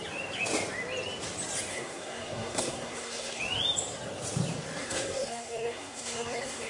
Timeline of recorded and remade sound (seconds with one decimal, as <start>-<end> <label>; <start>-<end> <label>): 0.0-1.7 recorded; 1.7-3.4 remade; 3.4-4.8 recorded; 4.8-6.7 remade